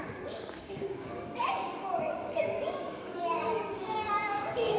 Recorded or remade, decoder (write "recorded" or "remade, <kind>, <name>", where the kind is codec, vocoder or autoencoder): remade, codec, DAC